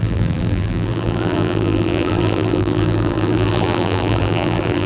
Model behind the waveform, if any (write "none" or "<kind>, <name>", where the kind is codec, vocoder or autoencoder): vocoder, BigVGAN v2